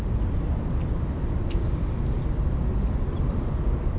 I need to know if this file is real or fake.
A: real